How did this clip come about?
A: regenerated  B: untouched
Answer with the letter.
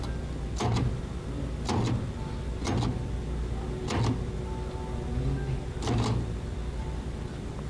B